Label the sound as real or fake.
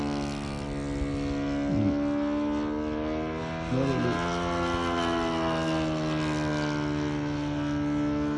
real